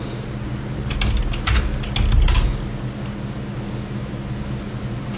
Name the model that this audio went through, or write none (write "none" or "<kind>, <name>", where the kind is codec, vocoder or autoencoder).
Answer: none